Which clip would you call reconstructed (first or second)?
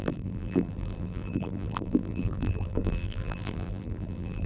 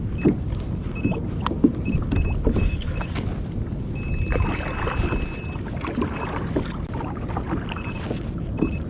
first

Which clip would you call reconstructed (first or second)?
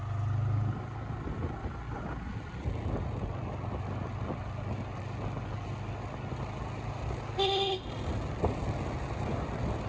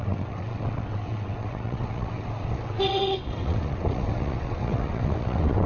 second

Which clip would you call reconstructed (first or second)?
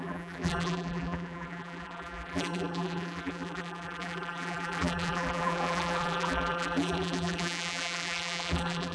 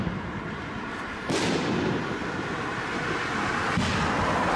first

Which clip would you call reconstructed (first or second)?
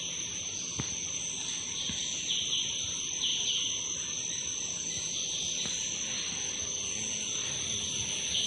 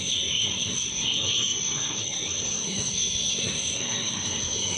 second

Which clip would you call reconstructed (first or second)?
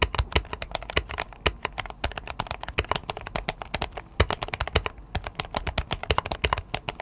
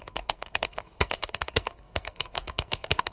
second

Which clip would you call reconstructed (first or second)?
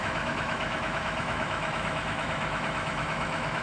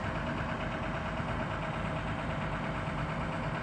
first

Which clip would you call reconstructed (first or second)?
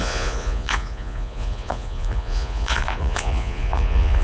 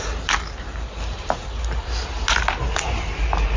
first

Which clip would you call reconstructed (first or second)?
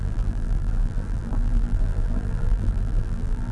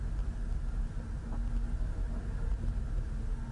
first